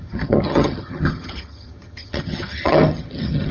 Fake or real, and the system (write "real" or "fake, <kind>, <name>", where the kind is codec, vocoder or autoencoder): fake, vocoder, HiFi-GAN